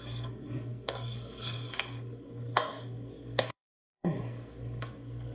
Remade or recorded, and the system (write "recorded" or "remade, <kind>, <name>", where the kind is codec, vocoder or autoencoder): remade, codec, SNAC